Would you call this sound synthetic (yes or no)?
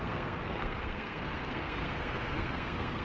yes